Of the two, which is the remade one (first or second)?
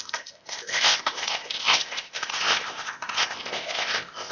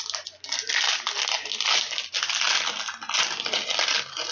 first